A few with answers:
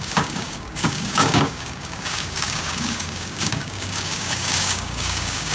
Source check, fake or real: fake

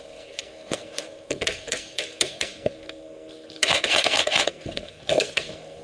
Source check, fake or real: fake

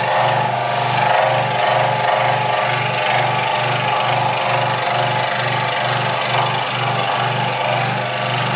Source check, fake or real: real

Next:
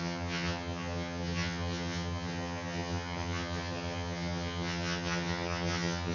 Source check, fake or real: fake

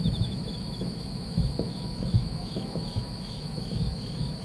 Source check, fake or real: fake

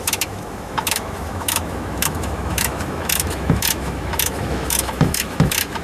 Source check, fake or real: fake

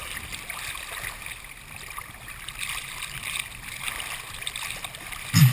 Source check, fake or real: real